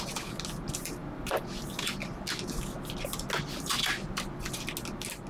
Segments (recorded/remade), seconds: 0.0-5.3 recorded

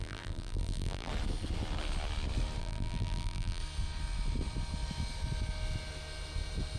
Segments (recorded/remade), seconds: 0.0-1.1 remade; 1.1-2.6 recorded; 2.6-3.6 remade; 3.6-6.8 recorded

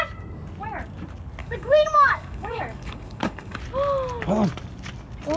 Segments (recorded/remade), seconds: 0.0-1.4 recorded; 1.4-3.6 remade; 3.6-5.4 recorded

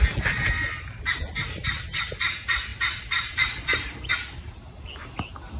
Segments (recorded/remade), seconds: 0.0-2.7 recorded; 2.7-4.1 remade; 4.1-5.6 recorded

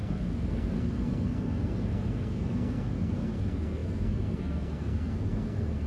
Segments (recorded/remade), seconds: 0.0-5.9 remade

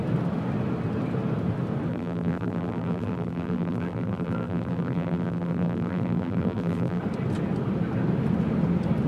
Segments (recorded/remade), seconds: 0.0-1.9 recorded; 1.9-7.0 remade; 7.0-9.1 recorded